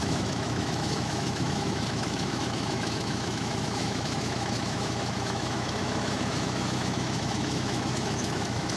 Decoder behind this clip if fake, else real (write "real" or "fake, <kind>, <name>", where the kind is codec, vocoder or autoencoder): fake, autoencoder, DAC-VAE